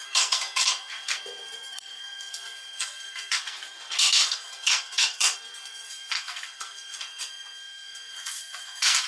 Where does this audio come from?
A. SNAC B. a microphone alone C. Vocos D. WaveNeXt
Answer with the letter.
A